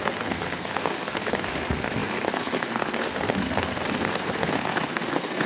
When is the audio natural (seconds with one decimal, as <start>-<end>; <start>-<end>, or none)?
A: none